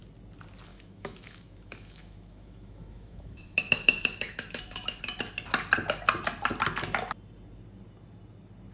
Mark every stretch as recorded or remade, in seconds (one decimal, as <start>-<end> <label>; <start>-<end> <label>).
0.0-0.7 recorded; 0.7-5.0 remade; 5.0-8.7 recorded